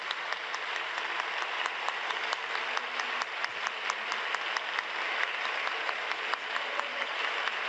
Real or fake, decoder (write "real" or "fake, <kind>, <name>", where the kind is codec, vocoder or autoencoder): real